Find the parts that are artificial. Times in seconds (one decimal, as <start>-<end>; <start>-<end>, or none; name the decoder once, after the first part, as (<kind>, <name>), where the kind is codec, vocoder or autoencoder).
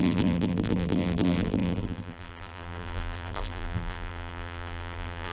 0.0-5.3 (vocoder, BigVGAN v2)